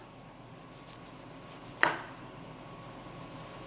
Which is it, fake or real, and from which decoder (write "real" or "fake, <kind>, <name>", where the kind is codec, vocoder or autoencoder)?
real